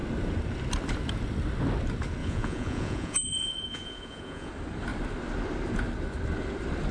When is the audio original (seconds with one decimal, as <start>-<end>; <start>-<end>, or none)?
0.0-2.2; 4.5-6.9